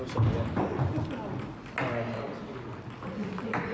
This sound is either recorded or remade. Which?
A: recorded